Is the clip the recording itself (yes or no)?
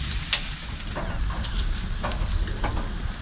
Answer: yes